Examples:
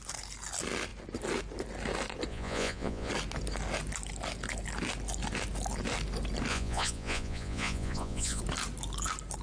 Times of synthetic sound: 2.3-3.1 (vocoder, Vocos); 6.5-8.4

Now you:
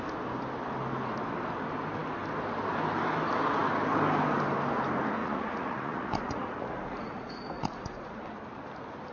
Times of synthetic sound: 5.2-8.2 (vocoder, Vocos)

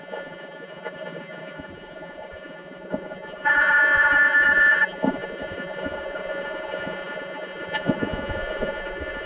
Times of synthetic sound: 0.0-9.3 (vocoder, Vocos)

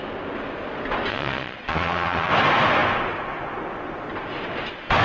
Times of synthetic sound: 1.1-2.3 (vocoder, Vocos)

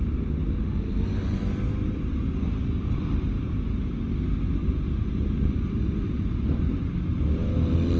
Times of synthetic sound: none

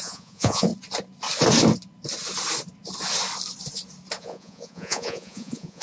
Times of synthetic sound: 0.0-0.7 (vocoder, Vocos); 4.2-5.8